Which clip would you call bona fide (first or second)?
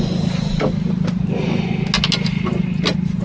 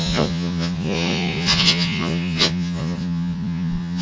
first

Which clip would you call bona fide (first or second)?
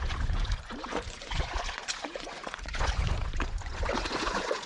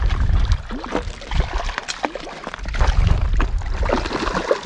second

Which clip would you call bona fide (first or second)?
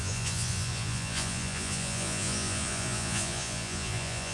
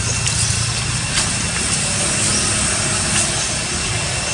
second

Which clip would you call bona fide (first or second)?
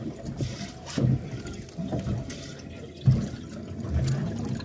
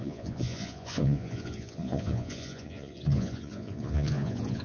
first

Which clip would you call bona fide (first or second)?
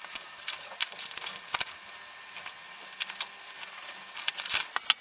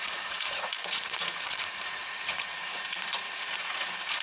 first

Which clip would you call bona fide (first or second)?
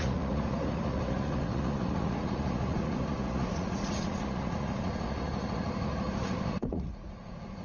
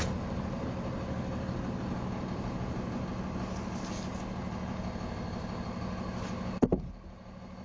second